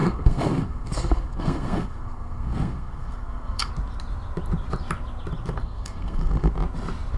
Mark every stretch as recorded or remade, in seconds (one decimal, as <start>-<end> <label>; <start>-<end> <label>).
0.0-3.7 remade; 3.7-5.6 recorded; 5.6-6.5 remade; 6.5-7.2 recorded